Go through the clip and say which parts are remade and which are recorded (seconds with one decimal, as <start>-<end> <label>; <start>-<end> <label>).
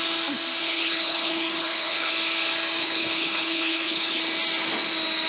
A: 0.0-0.6 recorded; 0.6-2.1 remade; 2.1-2.8 recorded; 2.8-4.2 remade; 4.2-5.3 recorded